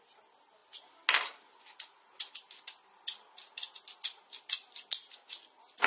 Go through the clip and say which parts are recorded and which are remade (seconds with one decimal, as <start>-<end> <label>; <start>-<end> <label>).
0.0-5.9 recorded